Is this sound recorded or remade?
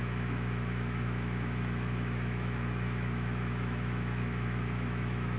remade